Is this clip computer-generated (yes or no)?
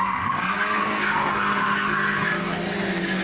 yes